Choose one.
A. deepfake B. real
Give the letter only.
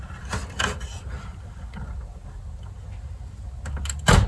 B